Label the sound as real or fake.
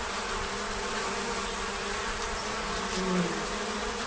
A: real